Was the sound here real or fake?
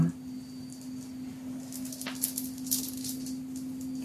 real